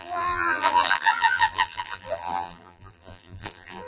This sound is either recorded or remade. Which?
remade